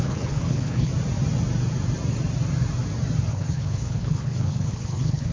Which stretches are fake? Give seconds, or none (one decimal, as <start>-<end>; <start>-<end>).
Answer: 0.0-0.9; 3.3-5.3

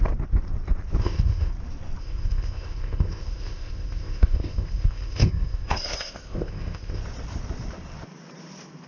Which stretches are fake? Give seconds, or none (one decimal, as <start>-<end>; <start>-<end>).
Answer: 1.0-1.5; 2.0-7.0

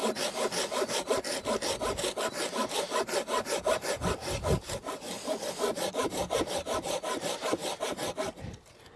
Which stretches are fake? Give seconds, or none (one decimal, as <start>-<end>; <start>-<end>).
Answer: none

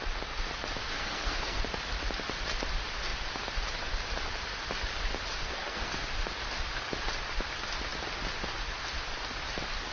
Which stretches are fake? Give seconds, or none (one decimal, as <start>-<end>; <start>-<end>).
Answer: 0.9-1.6; 5.4-5.9

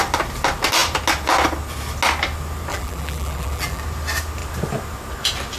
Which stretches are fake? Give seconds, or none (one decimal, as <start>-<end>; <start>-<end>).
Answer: 2.7-3.8

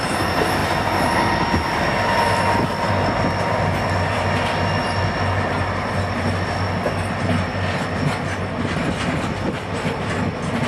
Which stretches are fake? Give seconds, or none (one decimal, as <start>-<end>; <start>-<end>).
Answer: none

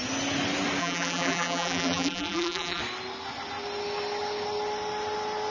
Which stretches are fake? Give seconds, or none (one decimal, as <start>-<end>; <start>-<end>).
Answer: 0.8-2.8

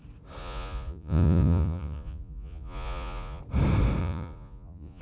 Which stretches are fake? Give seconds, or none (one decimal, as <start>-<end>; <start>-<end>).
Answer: 0.4-3.4; 4.0-5.0